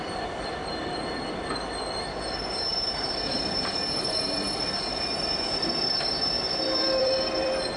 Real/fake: fake